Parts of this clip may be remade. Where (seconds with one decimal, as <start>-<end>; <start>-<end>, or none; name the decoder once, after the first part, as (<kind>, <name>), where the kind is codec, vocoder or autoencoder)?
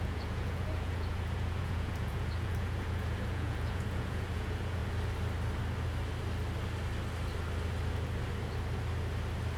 0.0-4.8 (vocoder, Vocos)